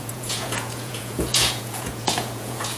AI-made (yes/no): yes